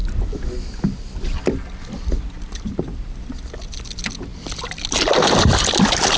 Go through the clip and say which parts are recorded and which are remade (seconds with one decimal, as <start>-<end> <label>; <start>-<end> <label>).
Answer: 0.0-6.2 recorded